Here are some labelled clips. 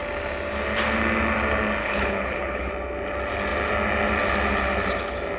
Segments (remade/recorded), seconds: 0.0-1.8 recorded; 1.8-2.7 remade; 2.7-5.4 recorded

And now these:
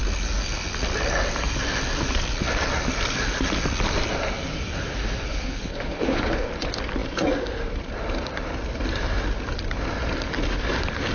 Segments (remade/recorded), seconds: 0.0-5.3 recorded; 5.3-6.5 remade; 6.5-11.1 recorded

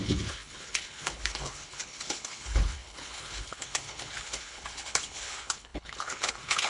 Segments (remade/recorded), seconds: 0.0-6.7 remade

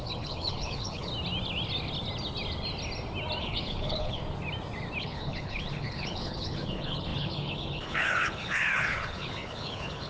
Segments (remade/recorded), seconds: 0.0-1.1 remade; 1.1-3.4 recorded; 3.4-4.2 remade; 4.2-5.0 recorded; 5.0-10.1 remade

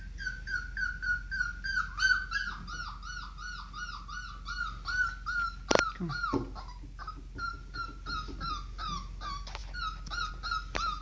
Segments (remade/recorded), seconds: 0.0-11.0 recorded

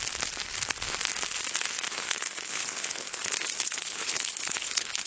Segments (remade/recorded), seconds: 0.0-1.9 recorded; 1.9-5.1 remade

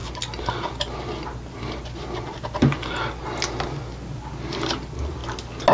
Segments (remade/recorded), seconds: 0.0-5.7 recorded

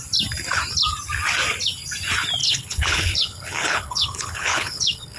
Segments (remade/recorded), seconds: 0.0-2.4 recorded; 2.4-5.2 remade